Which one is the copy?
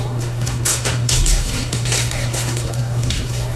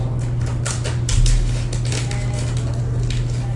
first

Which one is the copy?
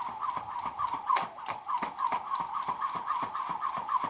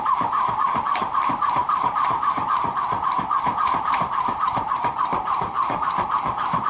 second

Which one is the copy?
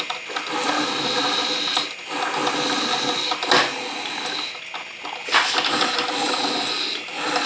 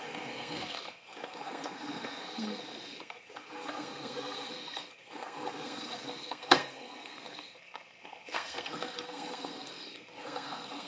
second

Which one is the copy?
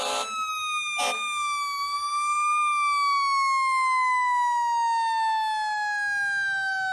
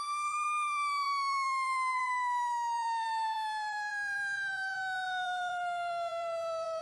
second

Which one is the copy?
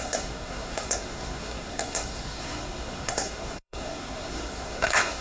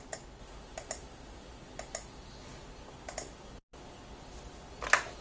first